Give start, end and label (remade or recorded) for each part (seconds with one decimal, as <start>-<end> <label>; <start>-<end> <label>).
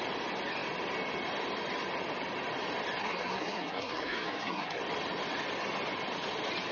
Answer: 0.0-3.0 recorded; 3.0-4.8 remade; 4.8-6.7 recorded